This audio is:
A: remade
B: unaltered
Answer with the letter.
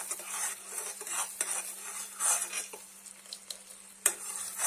B